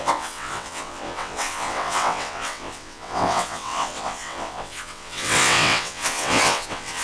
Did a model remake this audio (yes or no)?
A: yes